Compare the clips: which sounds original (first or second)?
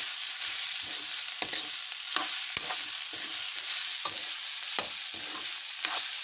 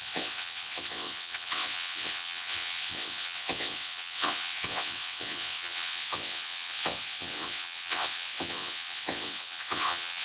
first